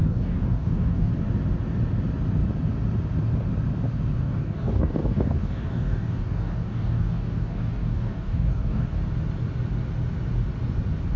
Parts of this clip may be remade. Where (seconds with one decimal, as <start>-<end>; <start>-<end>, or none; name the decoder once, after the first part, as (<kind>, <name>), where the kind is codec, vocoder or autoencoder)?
0.0-1.1 (codec, DAC); 4.2-9.0